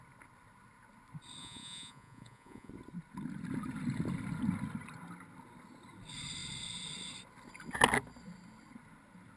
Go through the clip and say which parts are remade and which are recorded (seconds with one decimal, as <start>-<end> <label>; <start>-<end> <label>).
0.0-1.4 recorded; 1.4-2.7 remade; 2.7-9.4 recorded